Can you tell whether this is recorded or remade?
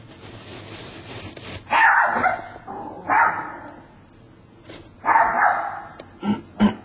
recorded